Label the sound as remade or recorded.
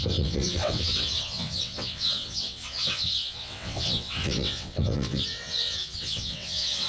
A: remade